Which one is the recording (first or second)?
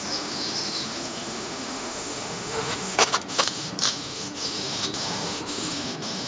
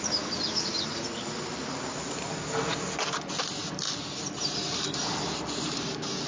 second